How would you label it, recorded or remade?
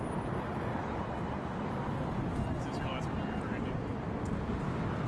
recorded